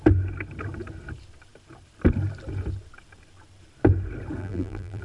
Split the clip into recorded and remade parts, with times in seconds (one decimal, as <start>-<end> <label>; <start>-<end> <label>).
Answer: 0.0-4.4 recorded; 4.4-5.0 remade